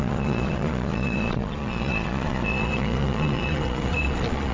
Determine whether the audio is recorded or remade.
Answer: remade